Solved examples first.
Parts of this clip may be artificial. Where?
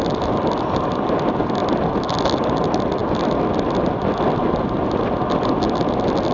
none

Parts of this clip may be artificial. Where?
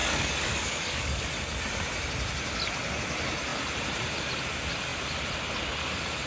0.0-1.2 (codec, DAC)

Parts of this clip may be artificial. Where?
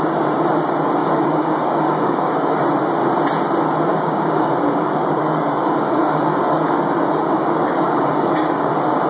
1.0-2.6 (codec, DAC); 3.9-8.7